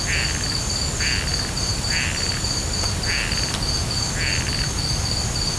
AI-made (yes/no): no